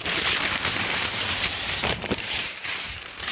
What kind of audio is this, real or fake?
fake